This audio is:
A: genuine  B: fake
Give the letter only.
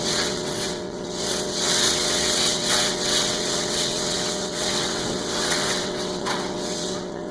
B